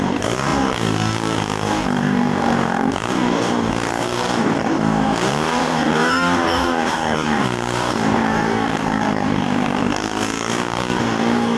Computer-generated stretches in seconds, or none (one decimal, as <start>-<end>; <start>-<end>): 0.0-11.6